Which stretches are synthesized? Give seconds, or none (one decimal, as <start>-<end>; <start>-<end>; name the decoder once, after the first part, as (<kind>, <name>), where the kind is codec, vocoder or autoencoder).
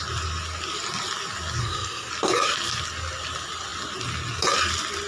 1.6-2.1 (codec, SNAC)